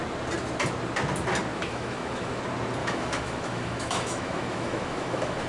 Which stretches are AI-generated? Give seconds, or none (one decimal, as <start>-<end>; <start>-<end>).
1.5-2.4; 2.8-5.5